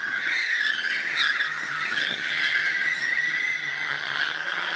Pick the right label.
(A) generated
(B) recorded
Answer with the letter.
A